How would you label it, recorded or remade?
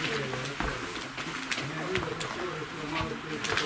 recorded